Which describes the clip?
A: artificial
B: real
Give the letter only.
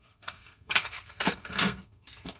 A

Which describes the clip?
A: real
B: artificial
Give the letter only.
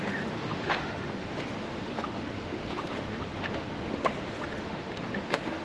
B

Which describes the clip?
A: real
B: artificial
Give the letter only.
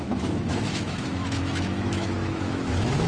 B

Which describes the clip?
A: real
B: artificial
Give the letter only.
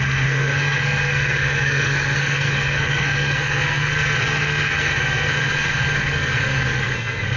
B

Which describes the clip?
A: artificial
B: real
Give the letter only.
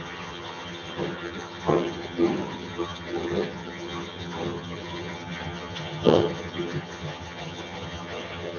A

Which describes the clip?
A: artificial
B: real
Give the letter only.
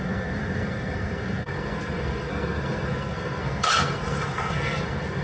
A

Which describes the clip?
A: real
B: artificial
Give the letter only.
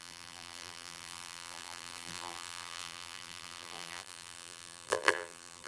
B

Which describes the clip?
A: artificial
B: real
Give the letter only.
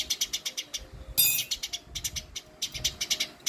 B